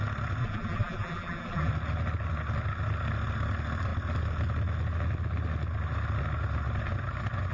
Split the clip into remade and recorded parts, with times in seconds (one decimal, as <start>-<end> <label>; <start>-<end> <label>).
0.0-0.4 recorded; 0.4-1.7 remade; 1.7-7.5 recorded